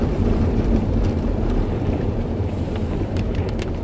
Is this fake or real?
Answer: fake